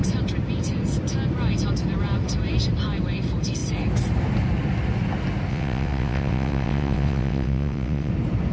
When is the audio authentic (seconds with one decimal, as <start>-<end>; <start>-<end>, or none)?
0.0-5.5; 8.1-8.5